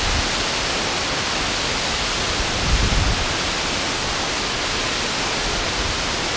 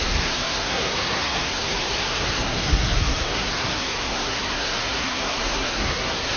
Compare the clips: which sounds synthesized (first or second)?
second